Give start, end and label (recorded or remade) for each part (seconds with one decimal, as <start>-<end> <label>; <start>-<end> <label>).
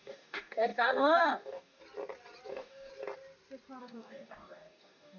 0.0-1.8 remade; 1.8-2.5 recorded; 2.5-2.9 remade; 2.9-3.8 recorded; 3.8-5.2 remade